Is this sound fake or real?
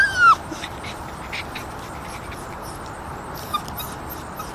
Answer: real